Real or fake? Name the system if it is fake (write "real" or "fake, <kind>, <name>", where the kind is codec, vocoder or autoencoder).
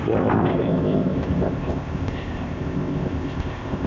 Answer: fake, codec, ZipCodec